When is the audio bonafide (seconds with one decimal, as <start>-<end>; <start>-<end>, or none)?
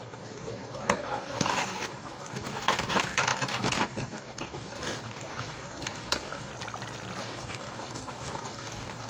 6.5-7.2